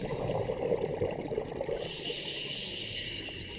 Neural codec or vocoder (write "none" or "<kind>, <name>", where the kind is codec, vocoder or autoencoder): none